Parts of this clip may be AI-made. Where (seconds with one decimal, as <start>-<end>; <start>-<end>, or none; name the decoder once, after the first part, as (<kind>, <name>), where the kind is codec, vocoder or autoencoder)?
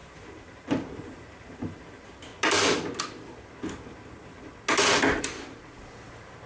0.0-2.3 (vocoder, BigVGAN v2); 5.2-6.5